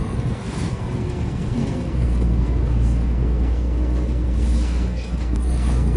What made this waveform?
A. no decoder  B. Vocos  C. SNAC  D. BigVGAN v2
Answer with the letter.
C